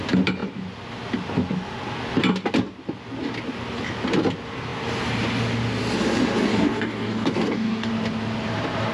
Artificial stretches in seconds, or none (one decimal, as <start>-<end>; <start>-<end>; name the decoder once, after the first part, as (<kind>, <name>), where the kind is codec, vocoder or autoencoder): 6.5-7.9 (codec, DAC)